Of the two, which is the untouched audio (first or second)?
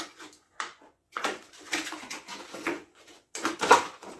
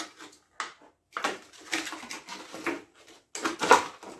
second